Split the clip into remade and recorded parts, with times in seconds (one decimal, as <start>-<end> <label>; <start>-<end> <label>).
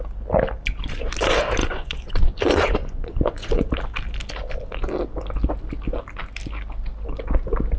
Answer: 0.0-1.6 recorded; 1.6-2.1 remade; 2.1-2.8 recorded; 2.8-3.7 remade; 3.7-7.8 recorded